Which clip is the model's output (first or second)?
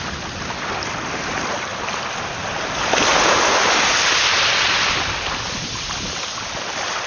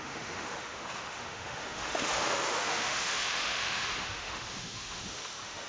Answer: second